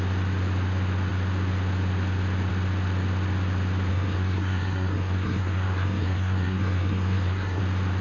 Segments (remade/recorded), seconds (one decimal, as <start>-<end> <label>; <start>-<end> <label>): 0.0-3.9 recorded; 3.9-7.6 remade; 7.6-8.0 recorded